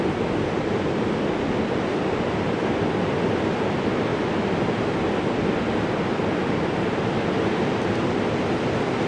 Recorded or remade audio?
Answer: recorded